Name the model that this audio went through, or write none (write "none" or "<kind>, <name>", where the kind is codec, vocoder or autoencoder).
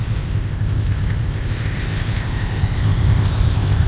codec, ZipCodec